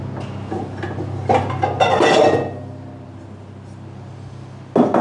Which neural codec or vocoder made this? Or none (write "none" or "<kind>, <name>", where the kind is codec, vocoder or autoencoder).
none